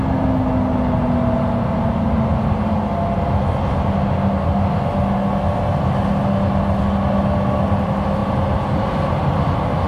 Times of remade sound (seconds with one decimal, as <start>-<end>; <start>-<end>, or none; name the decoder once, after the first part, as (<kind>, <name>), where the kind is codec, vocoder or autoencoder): none